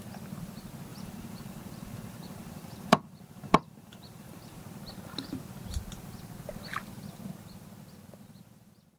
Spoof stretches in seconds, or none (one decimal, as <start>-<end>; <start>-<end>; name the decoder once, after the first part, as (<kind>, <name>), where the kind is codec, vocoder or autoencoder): 0.9-4.6 (vocoder, BigVGAN v2)